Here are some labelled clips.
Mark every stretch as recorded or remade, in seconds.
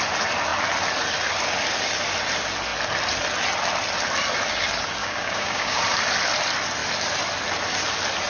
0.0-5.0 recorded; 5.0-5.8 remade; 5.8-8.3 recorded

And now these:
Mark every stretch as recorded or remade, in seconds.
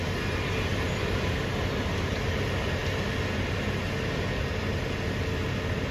0.0-5.9 recorded